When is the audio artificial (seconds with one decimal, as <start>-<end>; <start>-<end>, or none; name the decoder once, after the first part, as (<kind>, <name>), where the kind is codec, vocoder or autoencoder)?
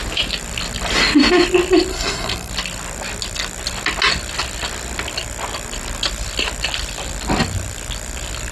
1.9-2.5 (codec, SNAC)